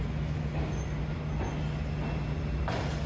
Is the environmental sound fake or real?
real